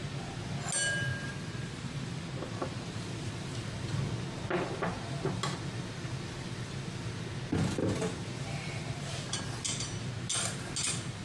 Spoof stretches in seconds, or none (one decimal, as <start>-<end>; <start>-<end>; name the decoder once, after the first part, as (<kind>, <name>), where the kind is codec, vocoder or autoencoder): 1.1-3.3 (vocoder, BigVGAN v2); 7.8-9.4